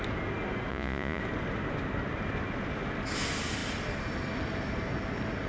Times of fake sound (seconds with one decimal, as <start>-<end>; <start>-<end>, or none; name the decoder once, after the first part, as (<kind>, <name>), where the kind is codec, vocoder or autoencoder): 0.7-1.2 (vocoder, Vocos)